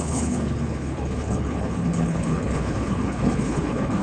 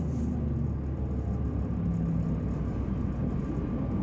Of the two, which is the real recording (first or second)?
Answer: second